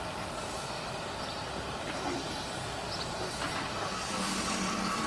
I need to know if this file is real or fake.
real